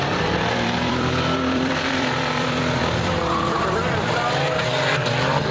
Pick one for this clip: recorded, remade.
remade